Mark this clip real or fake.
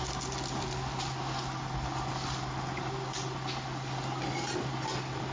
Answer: real